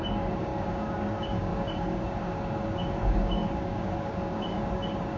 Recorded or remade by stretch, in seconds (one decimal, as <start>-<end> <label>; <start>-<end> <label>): 0.0-5.2 remade